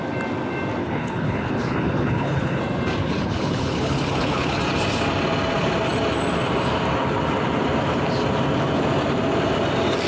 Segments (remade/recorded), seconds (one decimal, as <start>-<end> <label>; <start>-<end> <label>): 0.0-0.8 recorded; 0.8-2.6 remade; 2.6-3.0 recorded; 3.0-4.6 remade; 4.6-10.1 recorded